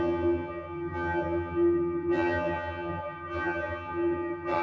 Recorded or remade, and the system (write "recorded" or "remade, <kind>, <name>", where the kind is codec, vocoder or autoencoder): remade, vocoder, HiFi-GAN